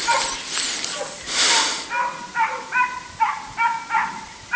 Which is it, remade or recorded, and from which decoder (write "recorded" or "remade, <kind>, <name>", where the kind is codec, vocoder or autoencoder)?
recorded